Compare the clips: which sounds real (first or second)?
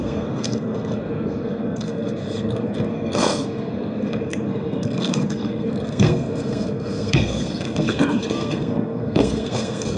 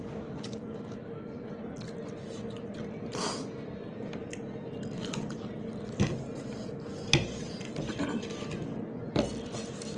second